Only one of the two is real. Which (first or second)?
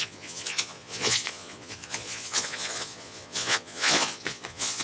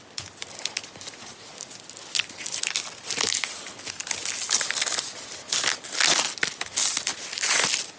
second